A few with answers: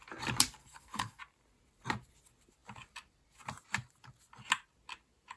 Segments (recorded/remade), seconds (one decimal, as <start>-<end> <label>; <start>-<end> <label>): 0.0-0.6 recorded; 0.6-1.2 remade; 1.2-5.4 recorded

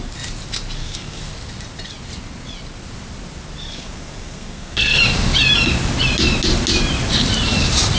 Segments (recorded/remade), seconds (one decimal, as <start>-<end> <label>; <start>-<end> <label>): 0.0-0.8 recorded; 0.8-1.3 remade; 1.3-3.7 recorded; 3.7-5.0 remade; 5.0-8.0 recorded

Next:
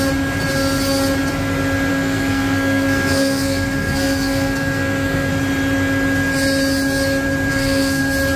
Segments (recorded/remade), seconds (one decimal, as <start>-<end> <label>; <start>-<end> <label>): 0.0-1.9 recorded; 1.9-5.3 remade; 5.3-7.5 recorded; 7.5-8.0 remade; 8.0-8.4 recorded

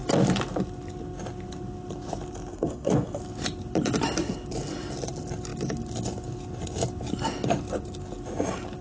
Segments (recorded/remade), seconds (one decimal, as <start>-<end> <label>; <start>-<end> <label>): 0.0-2.5 recorded; 2.5-3.2 remade; 3.2-8.8 recorded

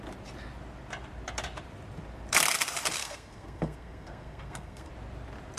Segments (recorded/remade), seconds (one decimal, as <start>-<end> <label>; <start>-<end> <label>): 0.0-3.0 recorded; 3.0-4.9 remade; 4.9-5.6 recorded

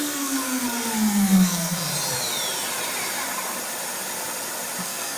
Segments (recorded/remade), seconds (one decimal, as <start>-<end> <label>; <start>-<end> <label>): 0.0-1.9 remade; 1.9-4.8 recorded; 4.8-5.2 remade